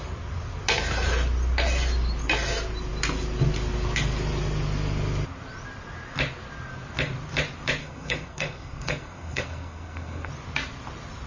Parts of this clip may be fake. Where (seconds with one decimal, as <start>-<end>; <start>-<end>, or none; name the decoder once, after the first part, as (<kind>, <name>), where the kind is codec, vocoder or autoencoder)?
7.8-10.3 (codec, SNAC)